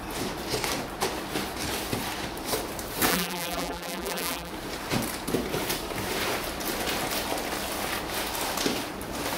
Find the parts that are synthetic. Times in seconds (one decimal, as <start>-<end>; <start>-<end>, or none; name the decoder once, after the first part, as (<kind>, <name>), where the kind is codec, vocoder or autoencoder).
3.1-4.5 (vocoder, BigVGAN v2)